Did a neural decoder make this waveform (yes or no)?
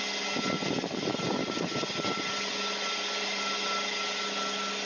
no